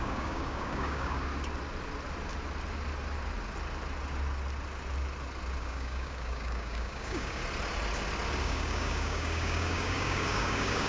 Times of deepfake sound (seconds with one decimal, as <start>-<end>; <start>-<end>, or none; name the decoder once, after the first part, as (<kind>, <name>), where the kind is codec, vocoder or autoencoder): 0.0-1.3 (codec, DAC); 5.6-7.4; 8.4-10.9